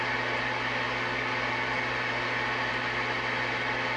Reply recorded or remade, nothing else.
recorded